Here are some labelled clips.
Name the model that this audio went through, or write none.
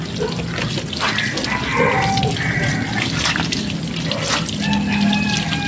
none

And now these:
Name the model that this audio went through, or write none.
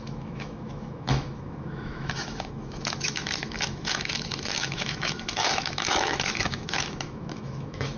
autoencoder, DAC-VAE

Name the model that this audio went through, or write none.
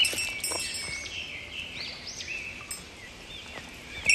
none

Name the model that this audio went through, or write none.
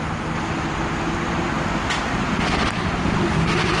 none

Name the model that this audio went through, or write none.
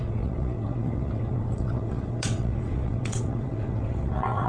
vocoder, WaveNeXt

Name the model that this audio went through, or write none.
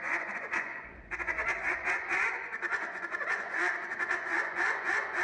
vocoder, Vocos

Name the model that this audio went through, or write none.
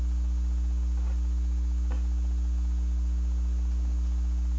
none